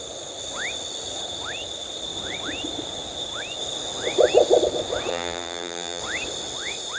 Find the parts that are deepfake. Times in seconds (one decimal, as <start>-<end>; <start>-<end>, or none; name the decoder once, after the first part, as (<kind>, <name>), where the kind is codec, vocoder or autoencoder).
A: 5.1-6.0 (vocoder, BigVGAN v2)